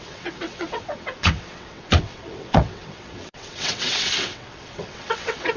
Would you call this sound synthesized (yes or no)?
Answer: yes